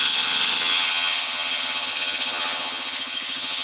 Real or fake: fake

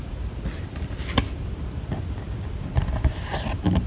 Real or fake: real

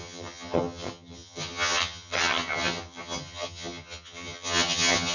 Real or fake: fake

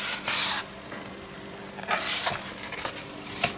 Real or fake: real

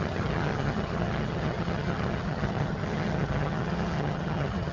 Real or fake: fake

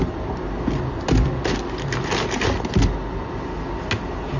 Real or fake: real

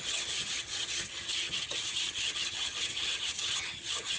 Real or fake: fake